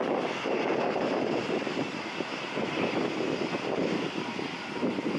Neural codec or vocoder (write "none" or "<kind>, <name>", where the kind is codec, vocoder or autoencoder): none